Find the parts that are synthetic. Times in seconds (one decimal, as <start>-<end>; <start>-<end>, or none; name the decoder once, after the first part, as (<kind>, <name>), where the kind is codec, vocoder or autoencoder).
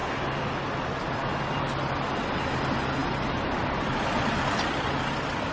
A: none